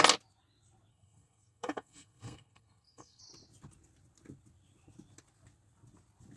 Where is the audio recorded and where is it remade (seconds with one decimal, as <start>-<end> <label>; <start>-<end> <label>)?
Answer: 0.0-0.9 recorded; 0.9-3.2 remade; 3.2-6.4 recorded